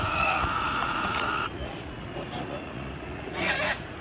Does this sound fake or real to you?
fake